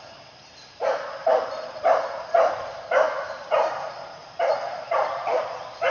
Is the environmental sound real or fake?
fake